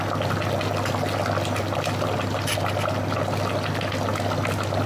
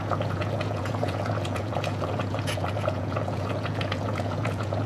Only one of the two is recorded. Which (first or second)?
first